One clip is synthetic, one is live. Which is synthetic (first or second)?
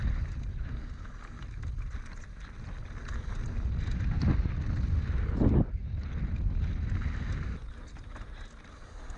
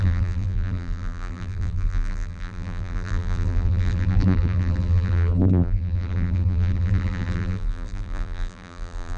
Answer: second